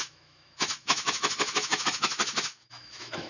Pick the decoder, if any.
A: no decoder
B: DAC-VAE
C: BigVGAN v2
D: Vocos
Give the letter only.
B